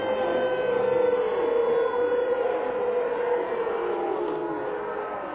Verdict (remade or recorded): recorded